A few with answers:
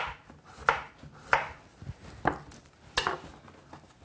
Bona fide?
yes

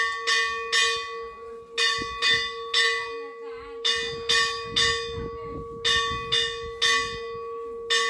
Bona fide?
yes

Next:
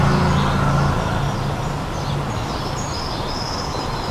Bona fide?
yes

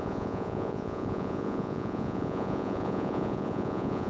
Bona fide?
no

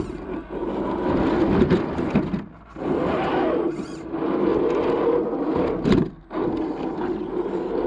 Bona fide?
yes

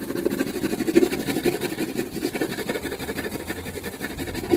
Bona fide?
yes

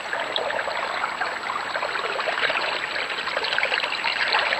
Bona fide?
yes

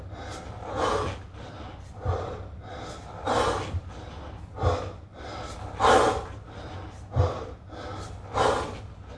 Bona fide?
yes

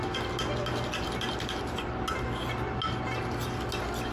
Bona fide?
yes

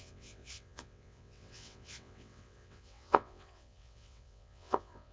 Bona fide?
no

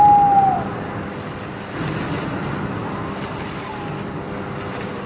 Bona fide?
yes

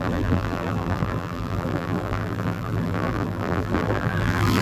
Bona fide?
no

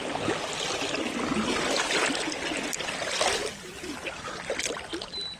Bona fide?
yes